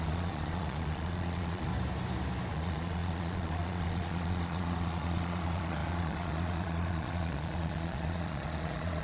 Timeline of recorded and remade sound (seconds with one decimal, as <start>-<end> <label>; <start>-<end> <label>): 0.0-1.7 remade; 1.7-2.5 recorded; 2.5-9.0 remade